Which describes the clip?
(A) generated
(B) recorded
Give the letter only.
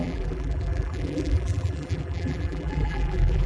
A